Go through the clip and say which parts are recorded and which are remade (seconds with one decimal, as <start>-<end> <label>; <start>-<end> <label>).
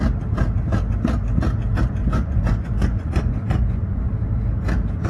0.0-2.0 recorded; 2.0-4.1 remade; 4.1-5.1 recorded